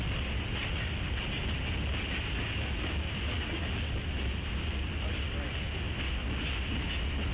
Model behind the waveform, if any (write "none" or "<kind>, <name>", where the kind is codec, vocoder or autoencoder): none